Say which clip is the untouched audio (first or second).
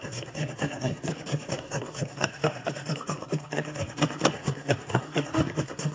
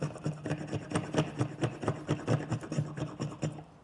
second